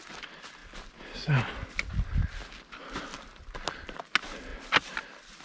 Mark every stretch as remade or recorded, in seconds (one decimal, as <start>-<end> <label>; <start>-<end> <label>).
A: 0.0-5.4 recorded